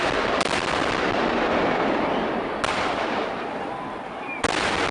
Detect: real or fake real